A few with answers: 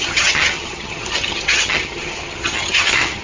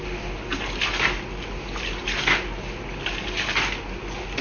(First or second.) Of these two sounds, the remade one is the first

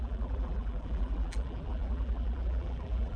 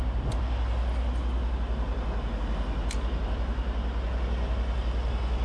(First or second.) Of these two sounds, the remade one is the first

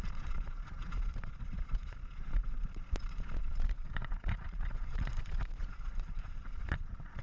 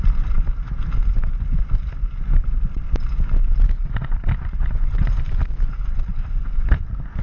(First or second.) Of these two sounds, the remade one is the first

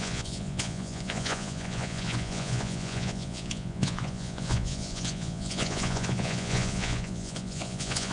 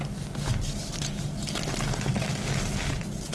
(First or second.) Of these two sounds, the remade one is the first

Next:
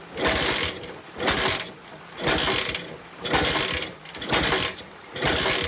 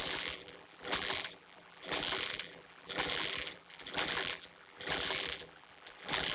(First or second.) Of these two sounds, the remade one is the second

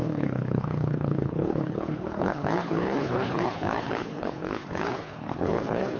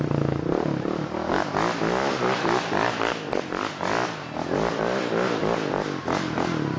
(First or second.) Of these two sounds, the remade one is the first